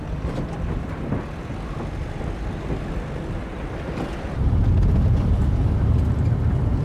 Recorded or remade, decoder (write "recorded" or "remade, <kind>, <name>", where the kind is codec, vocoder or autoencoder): recorded